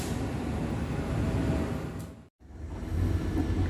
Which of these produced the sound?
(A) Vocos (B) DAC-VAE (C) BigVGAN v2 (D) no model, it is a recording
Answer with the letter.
D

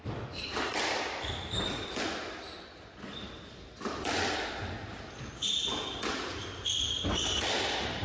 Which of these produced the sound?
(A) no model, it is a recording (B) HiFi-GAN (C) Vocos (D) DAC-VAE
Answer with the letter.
A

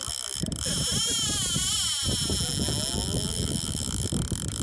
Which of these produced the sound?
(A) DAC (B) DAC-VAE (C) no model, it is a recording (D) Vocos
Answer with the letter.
C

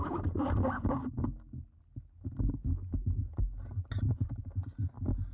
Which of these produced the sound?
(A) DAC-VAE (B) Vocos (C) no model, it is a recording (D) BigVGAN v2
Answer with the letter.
C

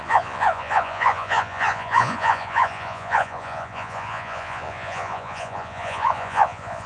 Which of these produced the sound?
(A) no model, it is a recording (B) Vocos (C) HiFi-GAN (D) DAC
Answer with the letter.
B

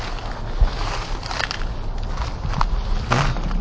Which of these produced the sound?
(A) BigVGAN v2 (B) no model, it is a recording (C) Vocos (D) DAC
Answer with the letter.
B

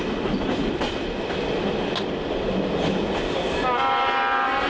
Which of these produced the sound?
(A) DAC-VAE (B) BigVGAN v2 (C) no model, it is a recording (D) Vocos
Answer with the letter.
C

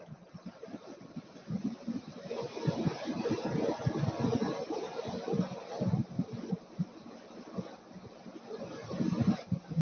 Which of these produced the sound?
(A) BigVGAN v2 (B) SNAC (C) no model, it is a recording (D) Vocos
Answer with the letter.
C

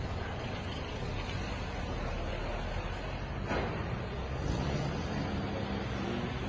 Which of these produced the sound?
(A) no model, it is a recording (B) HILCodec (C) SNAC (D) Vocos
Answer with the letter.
A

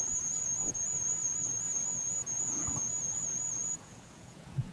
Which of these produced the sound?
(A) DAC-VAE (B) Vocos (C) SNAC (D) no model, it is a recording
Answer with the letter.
B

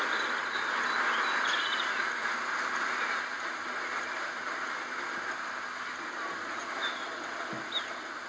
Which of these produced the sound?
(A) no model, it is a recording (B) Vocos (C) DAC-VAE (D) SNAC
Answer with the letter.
A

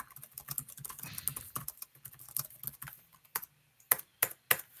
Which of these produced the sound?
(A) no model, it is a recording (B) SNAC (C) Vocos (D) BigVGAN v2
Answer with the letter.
A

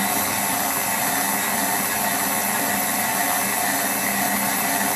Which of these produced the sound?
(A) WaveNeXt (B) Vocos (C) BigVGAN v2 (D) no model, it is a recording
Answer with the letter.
D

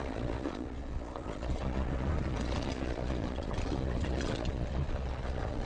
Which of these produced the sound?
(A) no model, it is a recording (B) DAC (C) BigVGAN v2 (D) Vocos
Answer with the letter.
D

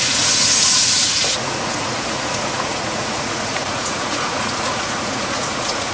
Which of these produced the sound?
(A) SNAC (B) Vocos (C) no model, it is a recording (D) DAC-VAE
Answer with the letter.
B